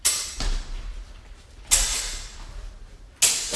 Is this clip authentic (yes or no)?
yes